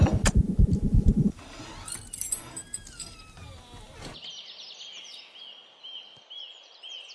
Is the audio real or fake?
real